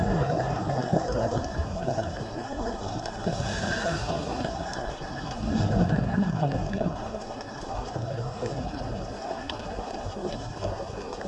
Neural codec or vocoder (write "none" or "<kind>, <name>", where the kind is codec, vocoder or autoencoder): codec, SNAC